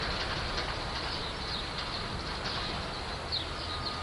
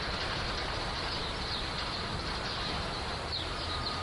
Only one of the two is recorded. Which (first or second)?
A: first